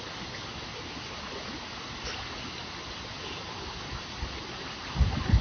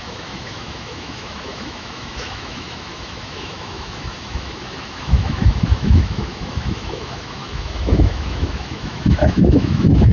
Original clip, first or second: first